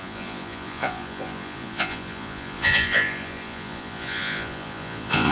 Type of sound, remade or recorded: remade